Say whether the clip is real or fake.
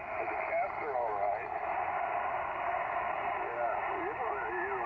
real